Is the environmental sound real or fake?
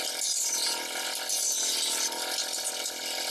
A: real